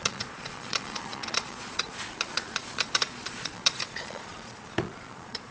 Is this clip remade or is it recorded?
remade